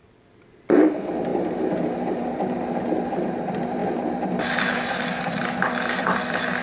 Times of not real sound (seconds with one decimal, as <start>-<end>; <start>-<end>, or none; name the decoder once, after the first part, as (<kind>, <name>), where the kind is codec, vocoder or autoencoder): 0.0-6.6 (vocoder, BigVGAN v2)